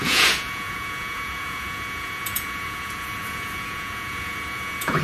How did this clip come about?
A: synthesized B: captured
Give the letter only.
A